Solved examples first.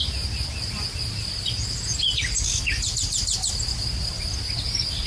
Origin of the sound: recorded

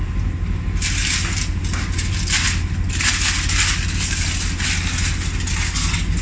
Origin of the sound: recorded